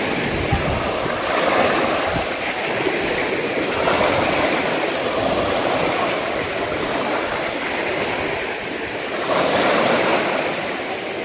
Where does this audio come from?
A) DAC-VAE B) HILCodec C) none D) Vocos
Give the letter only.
C